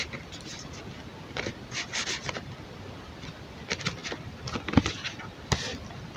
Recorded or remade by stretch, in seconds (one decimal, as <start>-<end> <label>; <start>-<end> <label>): 0.0-6.2 recorded

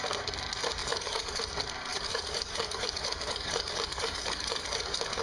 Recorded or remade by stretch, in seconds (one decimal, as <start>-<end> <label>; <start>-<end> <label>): 0.0-0.8 recorded; 0.8-1.4 remade; 1.4-1.9 recorded; 1.9-5.2 remade

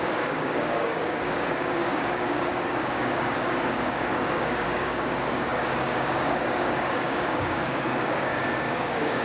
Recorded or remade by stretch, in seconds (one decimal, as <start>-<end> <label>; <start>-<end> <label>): 0.0-9.2 remade